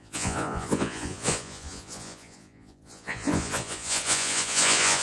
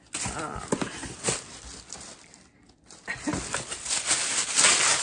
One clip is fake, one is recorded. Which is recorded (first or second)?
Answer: second